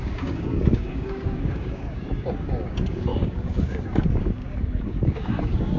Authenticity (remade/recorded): remade